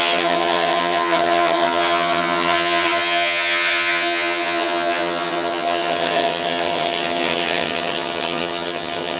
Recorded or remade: remade